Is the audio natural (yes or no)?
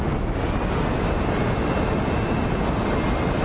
yes